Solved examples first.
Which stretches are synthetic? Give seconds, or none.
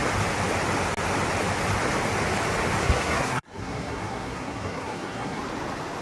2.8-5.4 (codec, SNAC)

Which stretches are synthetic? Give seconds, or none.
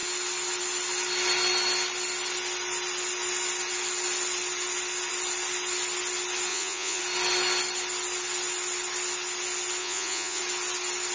6.5-7.0 (vocoder, Vocos); 9.8-10.4